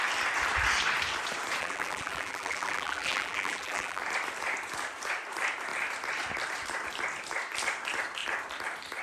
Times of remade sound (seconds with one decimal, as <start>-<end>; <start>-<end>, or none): 1.6-4.0